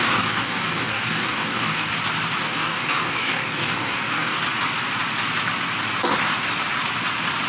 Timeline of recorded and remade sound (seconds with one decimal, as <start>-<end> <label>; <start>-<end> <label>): 0.0-1.9 remade; 1.9-2.4 recorded; 2.4-4.4 remade; 4.4-7.5 recorded